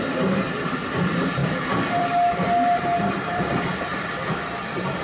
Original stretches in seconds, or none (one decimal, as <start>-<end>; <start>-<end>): none